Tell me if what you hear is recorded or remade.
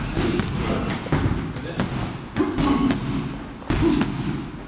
recorded